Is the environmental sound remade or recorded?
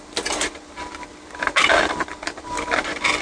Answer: recorded